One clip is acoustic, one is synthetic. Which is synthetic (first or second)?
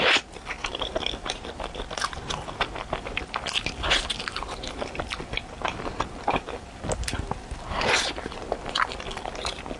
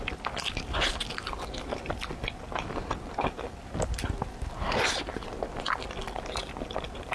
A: first